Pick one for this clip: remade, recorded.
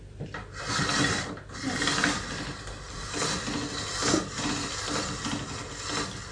recorded